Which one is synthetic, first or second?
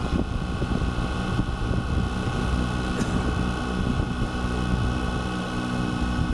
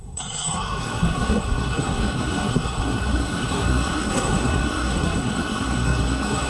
second